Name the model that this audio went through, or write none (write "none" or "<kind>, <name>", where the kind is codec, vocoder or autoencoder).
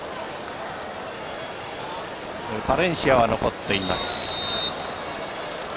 none